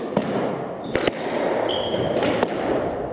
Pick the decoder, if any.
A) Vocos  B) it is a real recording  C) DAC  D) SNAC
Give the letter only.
B